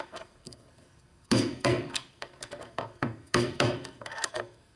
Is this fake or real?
fake